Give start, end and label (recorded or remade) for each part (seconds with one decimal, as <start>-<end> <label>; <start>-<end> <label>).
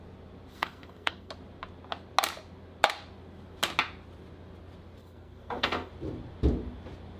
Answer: 0.0-0.5 recorded; 0.5-1.3 remade; 1.3-5.0 recorded; 5.0-5.9 remade; 5.9-7.2 recorded